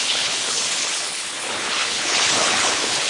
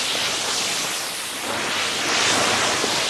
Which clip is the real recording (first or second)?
second